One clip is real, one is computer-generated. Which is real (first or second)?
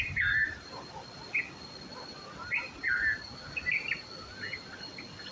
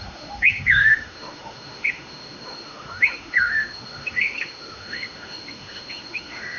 first